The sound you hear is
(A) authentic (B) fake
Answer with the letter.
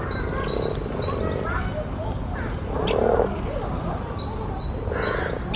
A